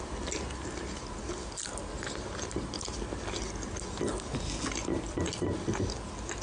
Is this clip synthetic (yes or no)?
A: no